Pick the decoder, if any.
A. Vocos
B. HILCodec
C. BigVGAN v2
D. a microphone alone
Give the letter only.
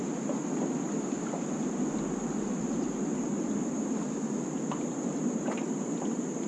D